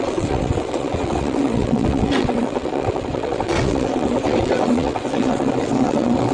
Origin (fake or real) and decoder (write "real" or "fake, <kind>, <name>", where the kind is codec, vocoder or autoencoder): fake, vocoder, WaveNeXt